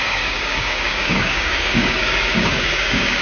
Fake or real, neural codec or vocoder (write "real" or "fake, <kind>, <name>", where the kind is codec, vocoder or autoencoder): fake, codec, DAC